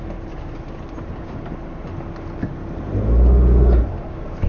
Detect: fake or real real